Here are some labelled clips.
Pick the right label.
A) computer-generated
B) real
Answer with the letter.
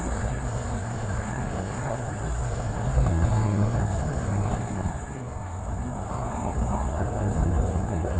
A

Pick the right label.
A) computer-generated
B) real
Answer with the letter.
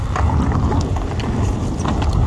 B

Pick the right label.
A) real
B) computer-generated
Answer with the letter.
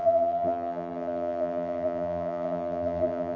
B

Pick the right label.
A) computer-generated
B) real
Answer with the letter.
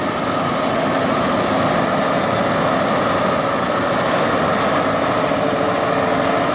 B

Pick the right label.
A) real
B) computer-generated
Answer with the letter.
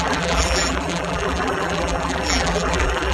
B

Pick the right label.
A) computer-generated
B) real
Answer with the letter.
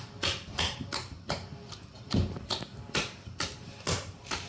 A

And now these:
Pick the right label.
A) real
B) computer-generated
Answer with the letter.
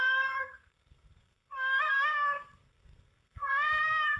B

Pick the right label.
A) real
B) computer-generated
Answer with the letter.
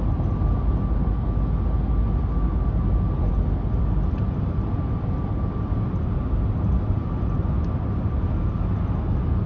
A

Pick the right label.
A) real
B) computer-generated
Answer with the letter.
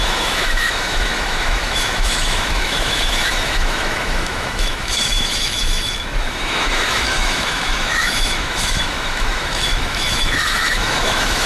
B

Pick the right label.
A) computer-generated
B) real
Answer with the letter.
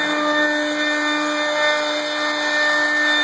B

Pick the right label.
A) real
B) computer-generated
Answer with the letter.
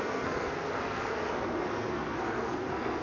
B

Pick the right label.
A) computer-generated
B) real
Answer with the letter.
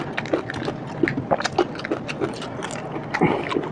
B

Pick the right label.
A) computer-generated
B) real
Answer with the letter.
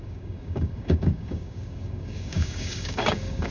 A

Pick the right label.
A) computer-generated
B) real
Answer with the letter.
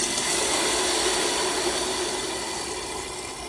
B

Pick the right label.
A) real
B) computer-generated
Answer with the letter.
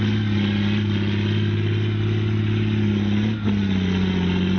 A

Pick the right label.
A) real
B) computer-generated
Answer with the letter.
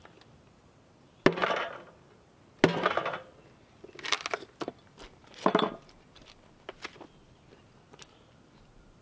A